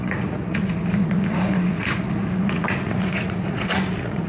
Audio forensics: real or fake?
fake